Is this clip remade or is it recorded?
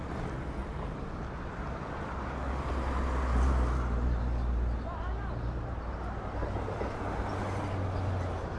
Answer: recorded